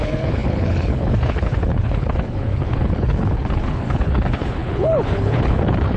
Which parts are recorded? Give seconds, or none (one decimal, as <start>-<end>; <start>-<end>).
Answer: none